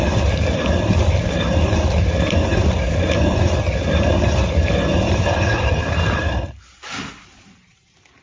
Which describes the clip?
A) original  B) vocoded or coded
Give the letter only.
A